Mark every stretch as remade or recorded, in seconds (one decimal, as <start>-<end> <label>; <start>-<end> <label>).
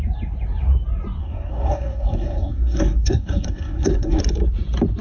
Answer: 0.0-1.2 recorded; 1.2-4.2 remade; 4.2-5.0 recorded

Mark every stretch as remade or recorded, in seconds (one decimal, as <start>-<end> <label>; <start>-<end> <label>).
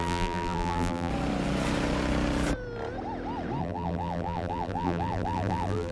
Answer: 0.0-1.1 remade; 1.1-3.6 recorded; 3.6-5.9 remade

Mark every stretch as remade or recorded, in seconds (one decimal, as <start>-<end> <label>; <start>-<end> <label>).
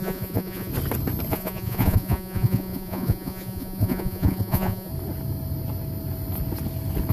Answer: 0.0-0.7 remade; 0.7-1.3 recorded; 1.3-4.9 remade; 4.9-7.1 recorded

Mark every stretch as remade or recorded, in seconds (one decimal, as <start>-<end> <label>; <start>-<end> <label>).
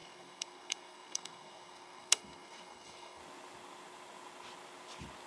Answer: 0.0-3.2 remade; 3.2-5.3 recorded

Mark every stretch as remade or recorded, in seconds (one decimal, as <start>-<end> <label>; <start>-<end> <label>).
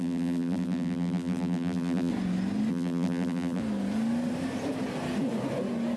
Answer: 0.0-2.1 remade; 2.1-2.7 recorded; 2.7-3.6 remade; 3.6-6.0 recorded